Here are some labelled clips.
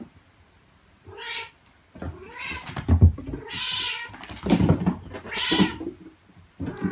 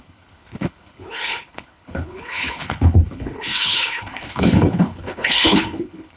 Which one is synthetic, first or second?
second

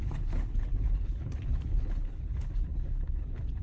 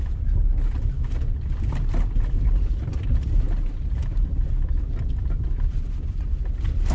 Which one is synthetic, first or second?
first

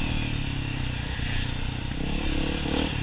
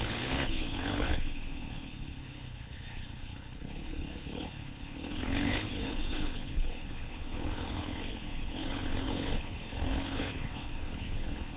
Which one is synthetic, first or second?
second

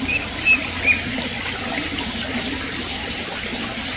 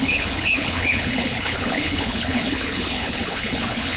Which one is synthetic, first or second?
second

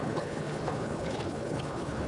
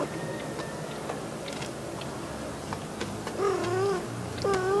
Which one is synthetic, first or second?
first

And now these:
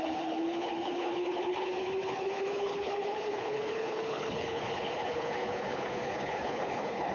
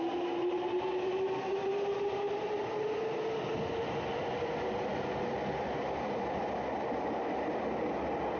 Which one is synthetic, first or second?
first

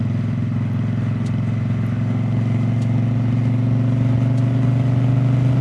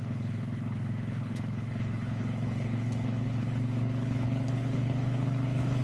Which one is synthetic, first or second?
second